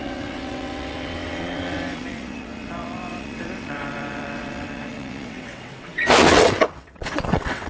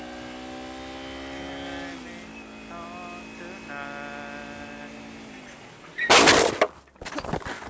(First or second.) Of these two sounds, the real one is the second